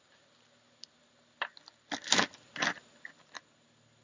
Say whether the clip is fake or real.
real